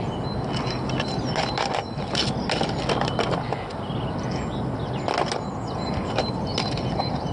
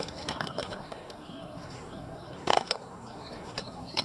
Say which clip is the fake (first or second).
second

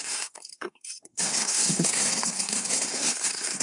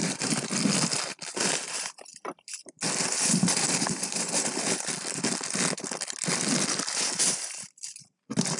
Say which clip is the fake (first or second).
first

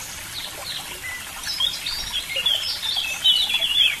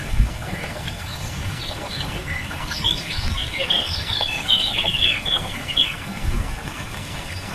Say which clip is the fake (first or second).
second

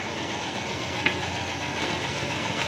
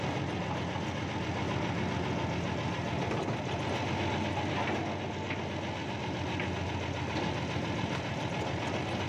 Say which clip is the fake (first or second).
first